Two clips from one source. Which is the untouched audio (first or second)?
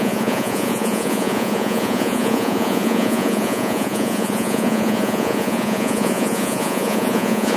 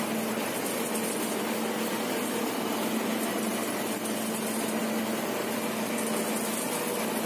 second